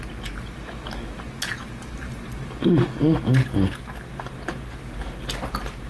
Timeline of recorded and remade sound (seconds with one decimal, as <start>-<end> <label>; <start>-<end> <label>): 0.0-2.0 recorded; 2.0-2.6 remade; 2.6-5.9 recorded